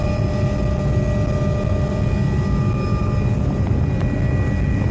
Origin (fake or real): real